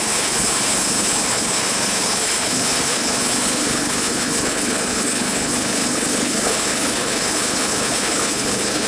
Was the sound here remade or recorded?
remade